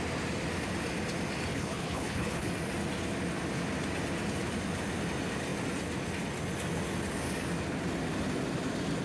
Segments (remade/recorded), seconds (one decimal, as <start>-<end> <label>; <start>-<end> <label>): 0.0-1.5 recorded; 1.5-2.5 remade; 2.5-9.0 recorded